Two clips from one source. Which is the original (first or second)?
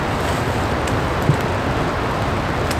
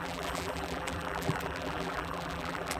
first